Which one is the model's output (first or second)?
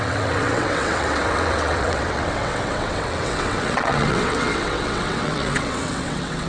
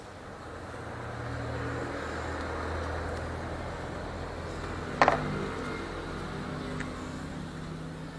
first